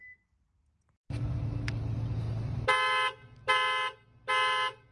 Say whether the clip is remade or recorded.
recorded